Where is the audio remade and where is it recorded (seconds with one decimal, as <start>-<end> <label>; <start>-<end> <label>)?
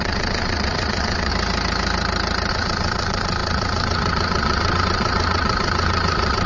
0.0-1.3 remade; 1.3-2.5 recorded; 2.5-6.5 remade